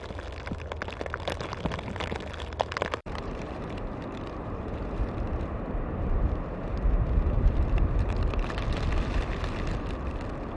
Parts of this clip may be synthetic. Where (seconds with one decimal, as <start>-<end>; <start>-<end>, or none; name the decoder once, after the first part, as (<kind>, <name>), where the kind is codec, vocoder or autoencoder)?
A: 3.0-8.1 (vocoder, BigVGAN v2)